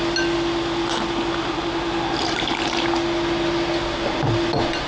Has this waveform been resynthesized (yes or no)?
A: no